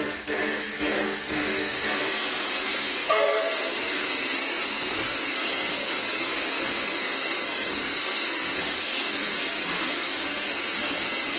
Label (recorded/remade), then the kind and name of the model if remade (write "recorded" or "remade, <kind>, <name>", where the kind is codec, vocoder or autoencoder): remade, codec, SNAC